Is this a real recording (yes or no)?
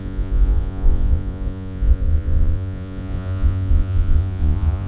no